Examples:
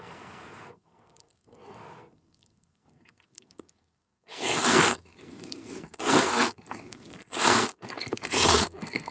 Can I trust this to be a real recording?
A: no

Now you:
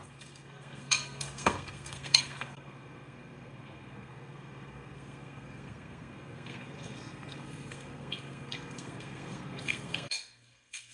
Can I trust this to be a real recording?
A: no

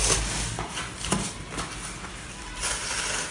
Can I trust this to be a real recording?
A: yes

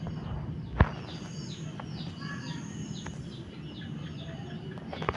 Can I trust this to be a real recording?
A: yes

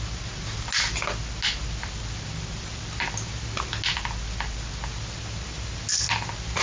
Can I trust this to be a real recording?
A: yes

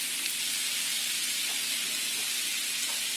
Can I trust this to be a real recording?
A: yes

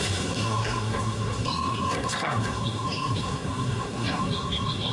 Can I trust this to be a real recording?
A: no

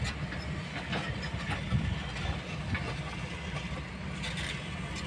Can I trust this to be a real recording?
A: yes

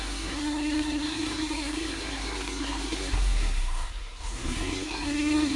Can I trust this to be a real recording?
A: no